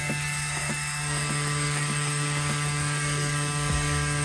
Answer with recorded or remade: remade